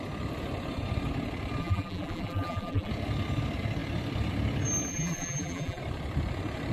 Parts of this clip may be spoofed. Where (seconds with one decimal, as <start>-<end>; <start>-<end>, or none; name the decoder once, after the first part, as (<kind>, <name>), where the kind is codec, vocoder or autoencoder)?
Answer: 1.6-2.9 (vocoder, BigVGAN v2); 4.9-5.8